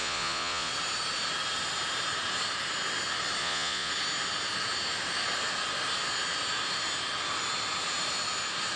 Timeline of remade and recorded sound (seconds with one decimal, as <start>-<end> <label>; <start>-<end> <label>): 0.0-0.7 remade; 0.7-3.4 recorded; 3.4-3.9 remade; 3.9-8.8 recorded